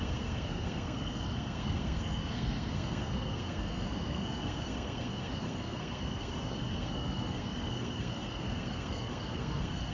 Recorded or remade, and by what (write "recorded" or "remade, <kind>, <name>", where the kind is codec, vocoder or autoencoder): remade, codec, SNAC